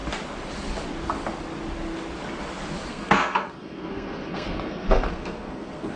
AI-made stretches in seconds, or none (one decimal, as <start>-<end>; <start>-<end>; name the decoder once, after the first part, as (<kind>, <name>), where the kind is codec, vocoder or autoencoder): 2.9-6.0 (codec, SNAC)